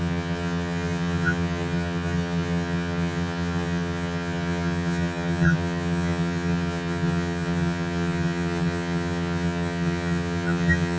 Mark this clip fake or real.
fake